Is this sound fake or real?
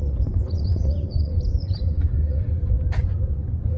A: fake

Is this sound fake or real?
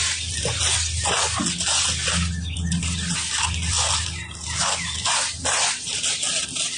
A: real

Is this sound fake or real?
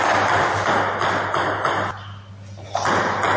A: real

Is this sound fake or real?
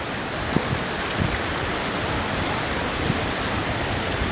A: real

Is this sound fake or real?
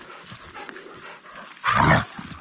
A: real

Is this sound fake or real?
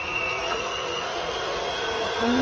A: fake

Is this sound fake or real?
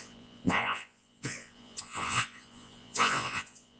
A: fake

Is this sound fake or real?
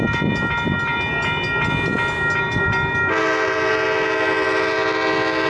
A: real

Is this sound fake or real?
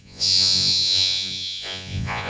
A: fake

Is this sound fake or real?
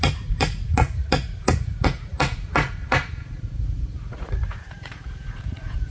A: fake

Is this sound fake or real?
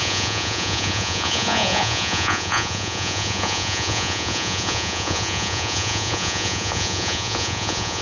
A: fake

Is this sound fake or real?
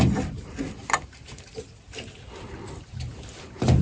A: real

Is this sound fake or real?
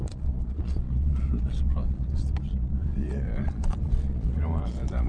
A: fake